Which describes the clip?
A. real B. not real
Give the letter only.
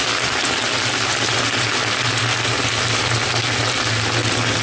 A